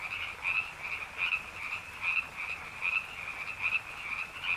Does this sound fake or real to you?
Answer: real